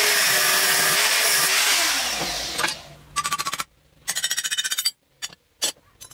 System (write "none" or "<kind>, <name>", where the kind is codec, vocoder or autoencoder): none